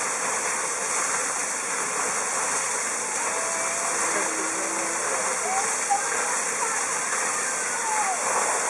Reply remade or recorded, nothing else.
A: recorded